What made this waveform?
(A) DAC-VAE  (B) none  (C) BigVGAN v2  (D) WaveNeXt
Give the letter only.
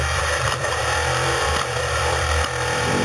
C